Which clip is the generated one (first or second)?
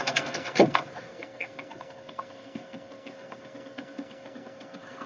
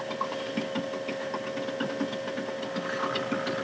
first